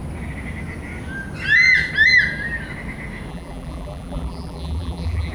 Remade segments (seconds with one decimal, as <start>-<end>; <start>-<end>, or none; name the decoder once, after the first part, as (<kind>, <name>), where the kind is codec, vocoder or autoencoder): 3.3-5.3 (vocoder, BigVGAN v2)